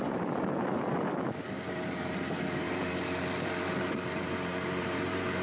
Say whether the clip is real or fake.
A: fake